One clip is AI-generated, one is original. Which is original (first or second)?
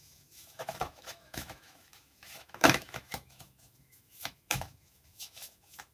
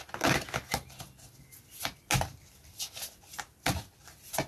second